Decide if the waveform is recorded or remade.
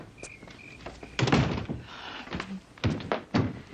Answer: recorded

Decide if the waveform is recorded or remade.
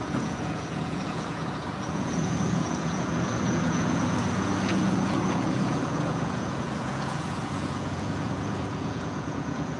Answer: remade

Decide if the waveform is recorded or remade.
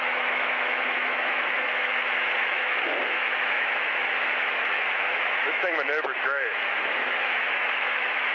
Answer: remade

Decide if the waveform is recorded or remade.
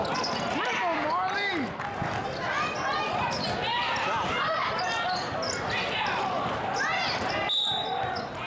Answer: recorded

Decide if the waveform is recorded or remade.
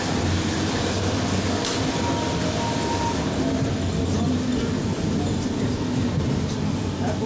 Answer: recorded